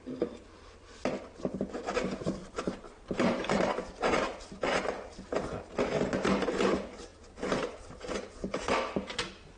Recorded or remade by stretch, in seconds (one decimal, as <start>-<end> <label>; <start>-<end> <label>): 0.0-2.4 recorded; 2.4-4.2 remade; 4.2-9.6 recorded